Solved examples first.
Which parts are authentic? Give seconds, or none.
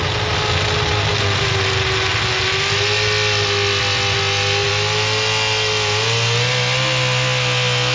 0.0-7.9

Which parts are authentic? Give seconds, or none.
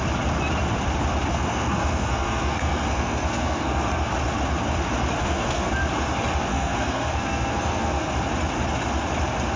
0.0-1.3; 4.1-5.2; 5.7-6.5; 8.1-9.6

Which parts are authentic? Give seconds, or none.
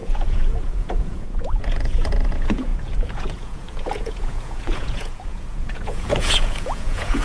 none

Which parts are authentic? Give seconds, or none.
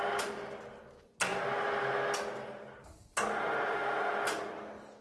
0.0-5.0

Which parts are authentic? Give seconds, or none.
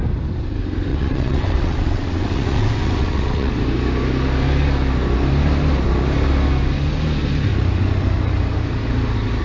0.0-0.9; 3.5-9.4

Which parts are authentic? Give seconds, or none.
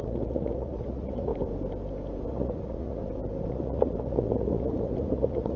1.3-2.3; 3.0-3.5